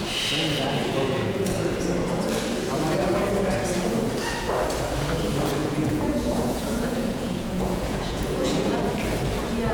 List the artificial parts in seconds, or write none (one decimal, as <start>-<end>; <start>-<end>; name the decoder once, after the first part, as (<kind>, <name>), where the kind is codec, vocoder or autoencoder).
0.8-1.6 (vocoder, Vocos); 5.6-8.9